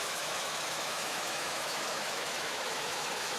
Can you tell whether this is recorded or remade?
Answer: remade